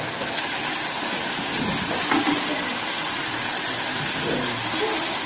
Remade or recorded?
recorded